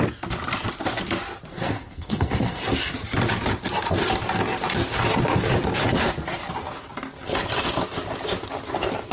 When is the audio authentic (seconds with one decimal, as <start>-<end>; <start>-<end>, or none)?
0.0-1.5; 2.6-9.1